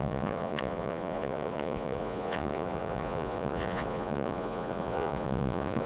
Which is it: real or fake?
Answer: fake